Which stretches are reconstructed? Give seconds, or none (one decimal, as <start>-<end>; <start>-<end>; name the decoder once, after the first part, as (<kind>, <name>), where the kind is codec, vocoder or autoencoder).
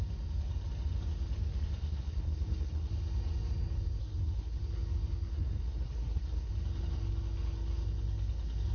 1.8-2.9 (codec, SNAC); 4.0-4.6; 5.3-6.5